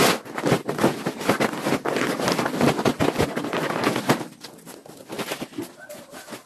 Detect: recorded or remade recorded